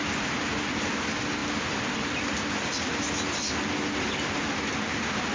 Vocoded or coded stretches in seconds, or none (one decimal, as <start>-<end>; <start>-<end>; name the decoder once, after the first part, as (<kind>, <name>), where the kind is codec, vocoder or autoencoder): none